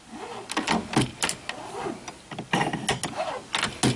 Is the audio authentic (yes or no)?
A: yes